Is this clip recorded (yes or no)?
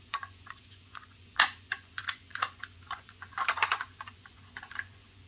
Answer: no